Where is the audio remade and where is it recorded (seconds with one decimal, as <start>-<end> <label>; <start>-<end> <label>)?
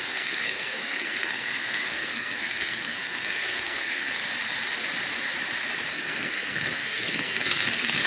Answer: 0.0-4.2 remade; 4.2-5.9 recorded; 5.9-8.1 remade